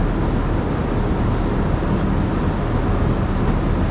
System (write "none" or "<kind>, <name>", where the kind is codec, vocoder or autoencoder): none